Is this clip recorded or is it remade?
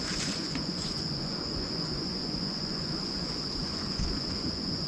remade